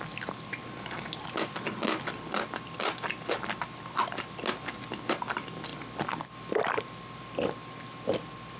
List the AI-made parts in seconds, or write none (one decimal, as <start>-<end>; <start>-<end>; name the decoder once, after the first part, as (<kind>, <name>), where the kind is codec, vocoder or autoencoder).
none